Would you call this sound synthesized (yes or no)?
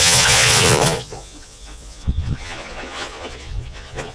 yes